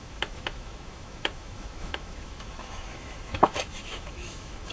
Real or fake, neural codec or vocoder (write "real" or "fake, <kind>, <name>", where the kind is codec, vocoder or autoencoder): fake, autoencoder, DAC-VAE